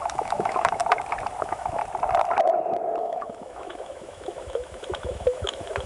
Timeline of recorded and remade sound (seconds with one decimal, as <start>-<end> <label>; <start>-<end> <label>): 0.0-0.8 remade; 0.8-1.4 recorded; 1.4-1.8 remade; 1.8-3.0 recorded; 3.0-5.9 remade